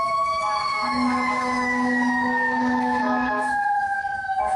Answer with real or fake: fake